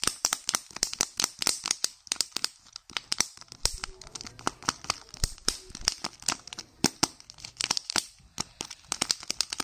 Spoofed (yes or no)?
yes